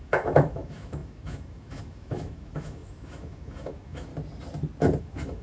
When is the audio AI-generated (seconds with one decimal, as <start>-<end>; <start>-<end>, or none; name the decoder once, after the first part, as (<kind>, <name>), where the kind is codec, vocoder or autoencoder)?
0.0-4.1 (autoencoder, DAC-VAE); 5.0-5.4